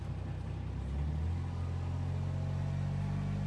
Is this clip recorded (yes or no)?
yes